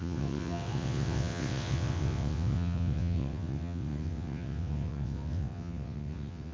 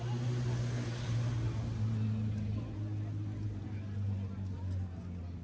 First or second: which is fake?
first